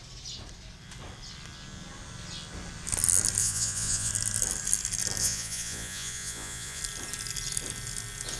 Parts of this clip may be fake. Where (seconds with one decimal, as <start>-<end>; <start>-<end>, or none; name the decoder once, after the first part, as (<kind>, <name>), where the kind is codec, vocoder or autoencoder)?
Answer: 3.4-4.1 (vocoder, Vocos); 5.2-6.8